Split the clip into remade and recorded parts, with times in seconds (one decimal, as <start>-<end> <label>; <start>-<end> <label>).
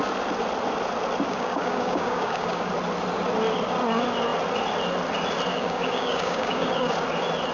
0.0-1.3 recorded; 1.3-2.7 remade; 2.7-5.5 recorded; 5.5-6.9 remade; 6.9-7.5 recorded